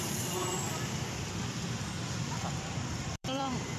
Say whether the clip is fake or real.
fake